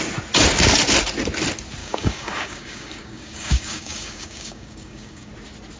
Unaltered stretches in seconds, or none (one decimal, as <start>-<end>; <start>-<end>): 0.0-1.8; 5.3-5.8